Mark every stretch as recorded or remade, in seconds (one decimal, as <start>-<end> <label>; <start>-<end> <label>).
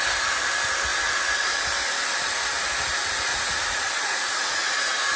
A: 0.0-3.3 recorded; 3.3-5.2 remade